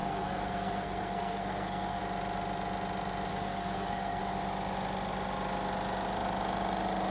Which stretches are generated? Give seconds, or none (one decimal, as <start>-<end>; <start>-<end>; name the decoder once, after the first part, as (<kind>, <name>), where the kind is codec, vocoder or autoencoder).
0.0-2.0 (codec, SNAC); 3.3-4.2